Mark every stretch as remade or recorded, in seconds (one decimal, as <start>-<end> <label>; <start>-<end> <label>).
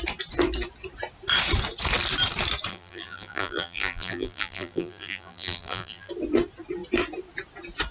0.0-2.7 recorded; 2.7-6.1 remade; 6.1-7.9 recorded